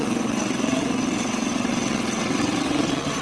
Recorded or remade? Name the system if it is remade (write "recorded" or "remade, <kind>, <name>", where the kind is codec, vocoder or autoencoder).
remade, vocoder, WaveNeXt